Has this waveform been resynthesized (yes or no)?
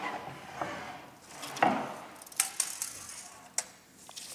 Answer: no